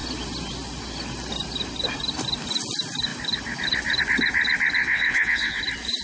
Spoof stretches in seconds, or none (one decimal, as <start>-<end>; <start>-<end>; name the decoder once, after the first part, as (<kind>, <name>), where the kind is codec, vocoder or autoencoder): 4.8-5.6 (vocoder, WaveNeXt)